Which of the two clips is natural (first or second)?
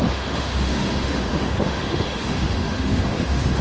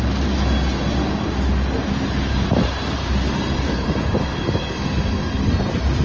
second